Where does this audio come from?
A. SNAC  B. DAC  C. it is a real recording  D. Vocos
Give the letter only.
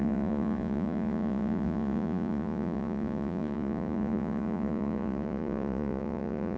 D